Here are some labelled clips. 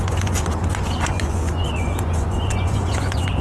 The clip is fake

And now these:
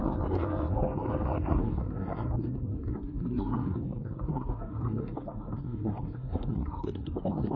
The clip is fake